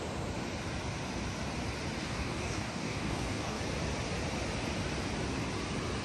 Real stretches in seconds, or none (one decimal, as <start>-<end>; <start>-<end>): 0.0-2.0; 3.6-6.0

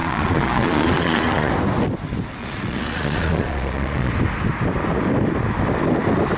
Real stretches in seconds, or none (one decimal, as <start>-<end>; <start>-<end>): 1.5-2.4; 4.1-6.4

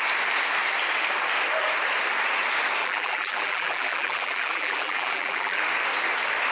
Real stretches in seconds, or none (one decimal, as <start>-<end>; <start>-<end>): 0.0-2.8; 5.6-6.5

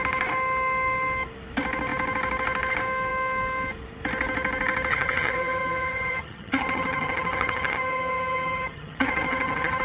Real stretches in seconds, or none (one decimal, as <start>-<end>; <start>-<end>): 0.0-4.9

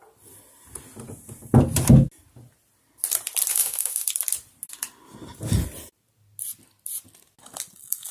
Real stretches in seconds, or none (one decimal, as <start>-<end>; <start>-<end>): 0.0-3.5; 4.1-8.1

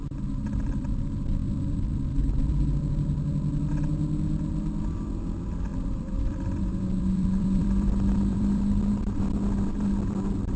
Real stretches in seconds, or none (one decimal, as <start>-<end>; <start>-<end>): 0.0-1.4; 2.5-5.7; 9.2-10.6

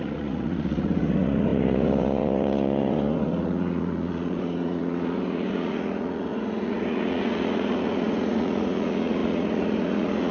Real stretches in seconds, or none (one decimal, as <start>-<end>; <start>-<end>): none

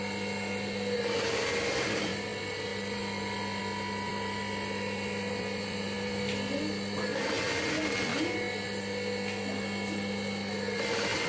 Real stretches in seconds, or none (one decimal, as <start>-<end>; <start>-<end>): 0.0-2.7; 3.6-4.1; 6.6-11.3